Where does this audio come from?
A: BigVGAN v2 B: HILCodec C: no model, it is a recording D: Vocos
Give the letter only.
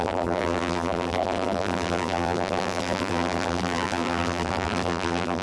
A